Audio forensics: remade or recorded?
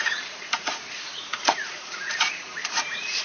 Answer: remade